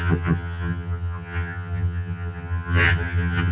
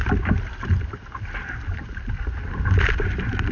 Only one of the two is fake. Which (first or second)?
first